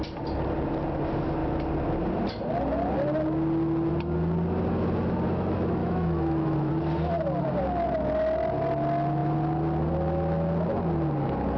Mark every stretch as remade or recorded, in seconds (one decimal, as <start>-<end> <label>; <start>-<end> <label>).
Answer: 0.0-5.8 recorded; 5.8-6.7 remade; 6.7-11.6 recorded